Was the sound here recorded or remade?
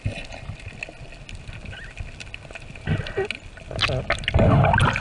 recorded